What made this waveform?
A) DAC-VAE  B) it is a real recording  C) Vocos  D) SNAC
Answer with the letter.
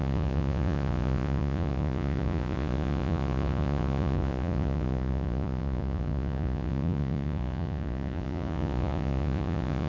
C